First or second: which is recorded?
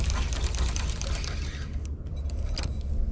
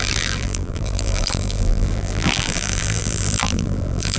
first